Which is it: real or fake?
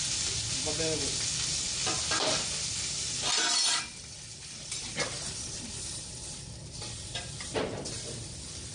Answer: real